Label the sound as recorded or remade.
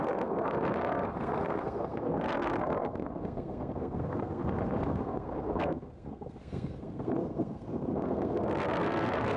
remade